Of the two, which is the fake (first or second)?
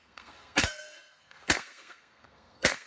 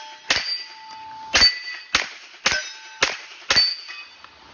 first